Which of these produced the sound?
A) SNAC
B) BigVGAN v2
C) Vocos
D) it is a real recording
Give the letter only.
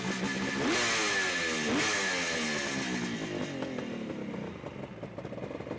D